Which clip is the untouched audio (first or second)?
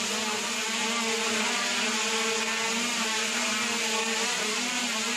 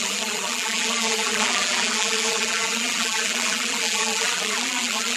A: first